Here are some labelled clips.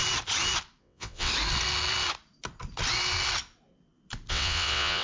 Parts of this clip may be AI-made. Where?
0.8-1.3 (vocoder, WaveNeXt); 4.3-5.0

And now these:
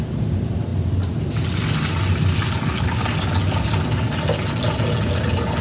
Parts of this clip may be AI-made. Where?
none

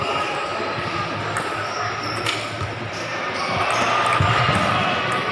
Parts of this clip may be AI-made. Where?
none

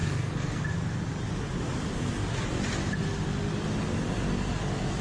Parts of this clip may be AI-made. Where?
0.0-0.6 (codec, SNAC)